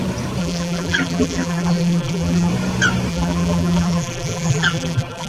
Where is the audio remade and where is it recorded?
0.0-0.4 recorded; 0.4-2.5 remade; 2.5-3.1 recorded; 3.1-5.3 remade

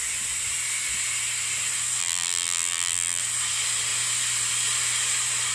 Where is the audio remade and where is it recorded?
0.0-2.0 recorded; 2.0-3.2 remade; 3.2-5.5 recorded

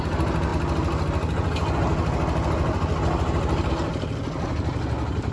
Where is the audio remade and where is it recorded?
0.0-5.3 recorded